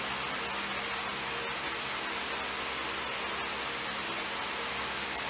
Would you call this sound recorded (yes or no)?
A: yes